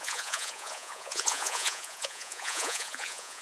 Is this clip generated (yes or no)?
yes